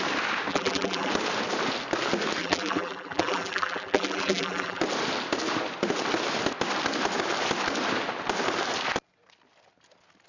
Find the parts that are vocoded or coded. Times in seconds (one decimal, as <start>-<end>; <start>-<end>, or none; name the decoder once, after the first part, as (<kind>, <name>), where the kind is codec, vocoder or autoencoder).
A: 0.5-1.1 (vocoder, BigVGAN v2); 2.4-4.8